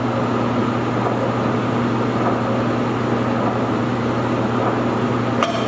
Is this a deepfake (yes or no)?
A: no